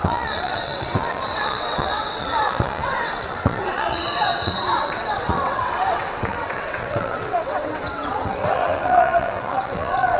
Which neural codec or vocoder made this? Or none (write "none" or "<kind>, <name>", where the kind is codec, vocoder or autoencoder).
vocoder, WaveNeXt